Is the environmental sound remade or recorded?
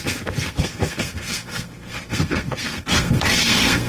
remade